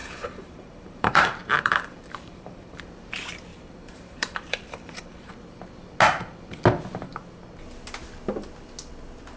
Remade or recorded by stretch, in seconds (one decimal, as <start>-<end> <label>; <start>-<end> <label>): 0.0-2.8 remade; 2.8-3.5 recorded; 3.5-5.3 remade; 5.3-9.4 recorded